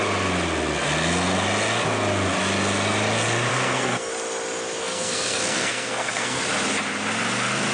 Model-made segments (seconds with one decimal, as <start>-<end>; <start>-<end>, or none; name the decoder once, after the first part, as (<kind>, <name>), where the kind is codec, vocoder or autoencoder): 3.5-4.1 (codec, SNAC); 4.8-6.4